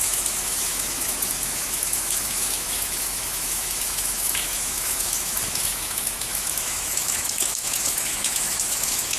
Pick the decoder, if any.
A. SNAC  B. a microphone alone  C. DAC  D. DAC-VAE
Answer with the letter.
D